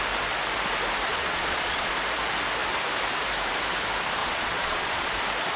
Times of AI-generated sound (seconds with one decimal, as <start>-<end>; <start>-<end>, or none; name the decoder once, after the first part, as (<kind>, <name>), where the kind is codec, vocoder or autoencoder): 1.1-1.9 (vocoder, Vocos); 4.2-5.1